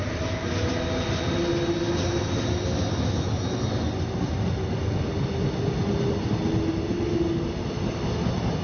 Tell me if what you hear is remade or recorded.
recorded